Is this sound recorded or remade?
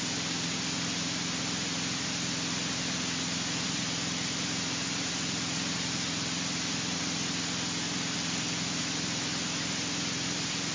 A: recorded